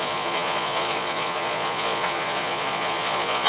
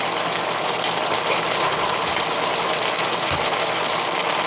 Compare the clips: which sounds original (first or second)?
second